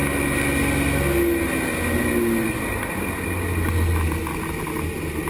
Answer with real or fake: real